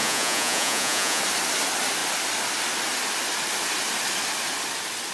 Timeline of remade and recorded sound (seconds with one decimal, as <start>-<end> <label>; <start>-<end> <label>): 0.0-1.2 remade; 1.2-5.1 recorded

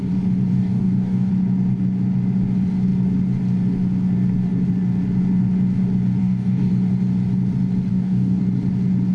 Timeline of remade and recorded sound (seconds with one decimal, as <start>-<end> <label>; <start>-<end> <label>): 0.0-0.5 recorded; 0.5-1.3 remade; 1.3-6.2 recorded; 6.2-6.7 remade; 6.7-7.9 recorded; 7.9-8.4 remade; 8.4-9.1 recorded